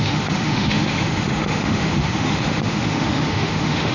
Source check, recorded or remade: remade